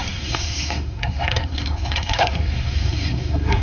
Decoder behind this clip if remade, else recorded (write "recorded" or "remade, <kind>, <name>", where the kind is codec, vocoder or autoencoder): remade, codec, SNAC